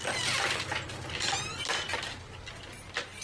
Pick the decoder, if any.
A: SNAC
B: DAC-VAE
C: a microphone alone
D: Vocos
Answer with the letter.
C